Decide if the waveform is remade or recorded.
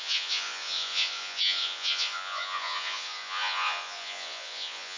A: remade